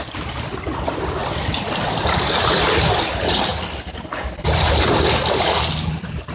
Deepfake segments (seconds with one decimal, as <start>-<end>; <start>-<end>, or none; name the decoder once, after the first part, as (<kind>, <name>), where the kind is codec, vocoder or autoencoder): none

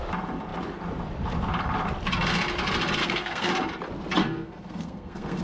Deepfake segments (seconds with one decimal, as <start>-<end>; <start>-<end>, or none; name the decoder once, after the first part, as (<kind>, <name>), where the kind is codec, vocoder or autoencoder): 3.0-3.5 (codec, SNAC); 4.2-5.4

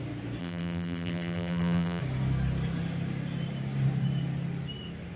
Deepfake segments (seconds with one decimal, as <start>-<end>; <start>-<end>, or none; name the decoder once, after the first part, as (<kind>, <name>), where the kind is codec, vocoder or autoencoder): 0.4-2.0 (vocoder, BigVGAN v2)

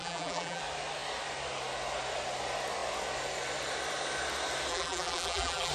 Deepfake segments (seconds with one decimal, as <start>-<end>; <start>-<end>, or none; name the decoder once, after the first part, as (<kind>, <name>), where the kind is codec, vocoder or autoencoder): 0.0-0.6 (vocoder, BigVGAN v2); 4.7-5.7

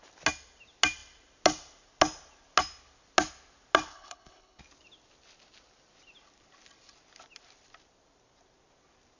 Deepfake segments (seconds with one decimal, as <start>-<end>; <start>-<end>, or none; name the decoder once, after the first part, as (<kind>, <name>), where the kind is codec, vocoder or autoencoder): 3.9-4.6 (codec, HILCodec)

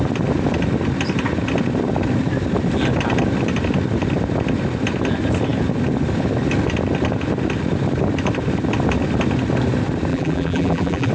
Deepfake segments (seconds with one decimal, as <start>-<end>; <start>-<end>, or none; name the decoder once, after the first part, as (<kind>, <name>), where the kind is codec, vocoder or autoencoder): 10.1-11.1 (vocoder, BigVGAN v2)

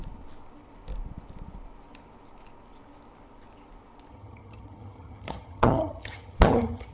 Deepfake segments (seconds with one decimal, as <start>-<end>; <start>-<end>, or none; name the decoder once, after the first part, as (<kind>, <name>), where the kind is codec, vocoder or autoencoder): 4.1-6.9 (vocoder, HiFi-GAN)

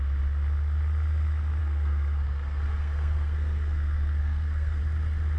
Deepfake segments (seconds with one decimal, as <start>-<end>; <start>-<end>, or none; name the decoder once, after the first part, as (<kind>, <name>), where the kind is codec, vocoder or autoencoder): 1.6-4.8 (codec, SNAC)